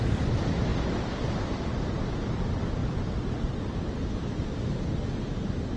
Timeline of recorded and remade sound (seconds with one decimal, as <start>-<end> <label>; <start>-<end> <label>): 0.0-5.8 recorded